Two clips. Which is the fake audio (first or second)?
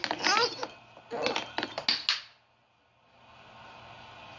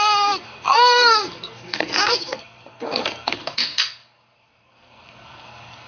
second